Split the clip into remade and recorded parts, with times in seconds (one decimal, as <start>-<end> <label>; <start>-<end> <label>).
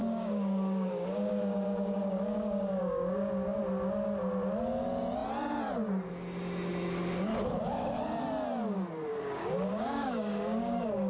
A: 0.0-3.6 remade; 3.6-9.1 recorded; 9.1-11.1 remade